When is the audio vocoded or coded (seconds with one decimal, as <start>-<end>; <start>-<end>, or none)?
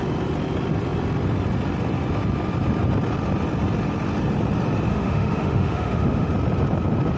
4.9-6.3